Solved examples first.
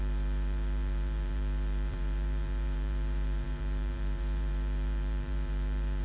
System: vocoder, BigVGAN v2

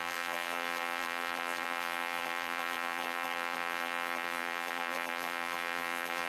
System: vocoder, BigVGAN v2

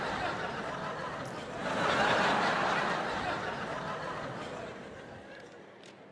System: none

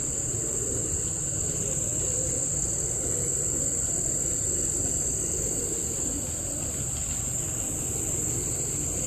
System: none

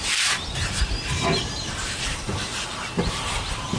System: vocoder, BigVGAN v2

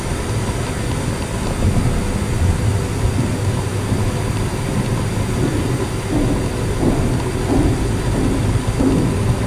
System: none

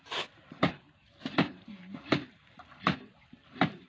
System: vocoder, BigVGAN v2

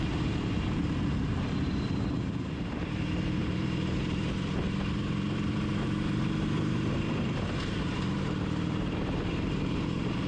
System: vocoder, BigVGAN v2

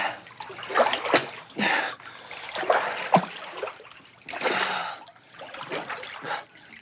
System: none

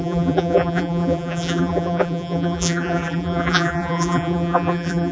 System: vocoder, BigVGAN v2